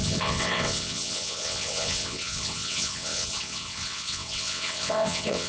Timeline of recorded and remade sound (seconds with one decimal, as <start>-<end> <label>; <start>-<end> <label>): 0.0-5.5 remade